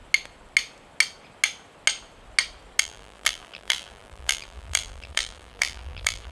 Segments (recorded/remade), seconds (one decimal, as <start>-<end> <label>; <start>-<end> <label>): 0.0-2.8 recorded; 2.8-6.3 remade